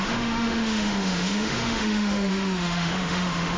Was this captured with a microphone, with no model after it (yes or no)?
no